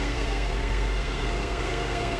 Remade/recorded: remade